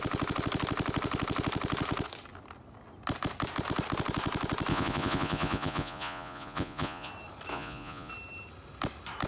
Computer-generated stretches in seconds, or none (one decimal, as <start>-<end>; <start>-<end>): 4.7-7.1; 7.5-8.1